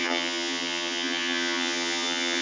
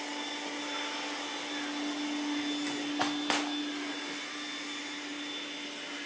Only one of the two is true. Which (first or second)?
second